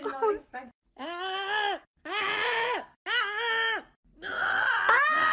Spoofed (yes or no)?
no